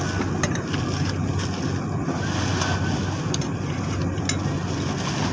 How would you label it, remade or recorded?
recorded